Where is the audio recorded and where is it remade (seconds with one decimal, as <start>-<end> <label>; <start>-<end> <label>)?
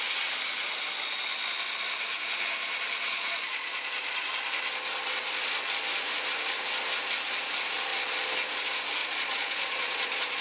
0.0-3.1 recorded; 3.1-4.3 remade; 4.3-9.0 recorded; 9.0-10.4 remade